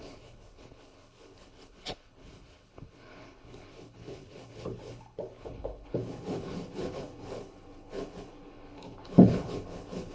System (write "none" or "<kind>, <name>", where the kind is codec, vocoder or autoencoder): codec, HILCodec